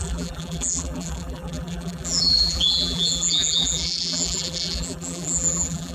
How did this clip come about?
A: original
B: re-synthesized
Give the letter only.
B